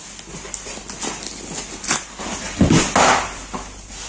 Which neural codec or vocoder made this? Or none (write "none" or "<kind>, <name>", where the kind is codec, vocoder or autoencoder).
none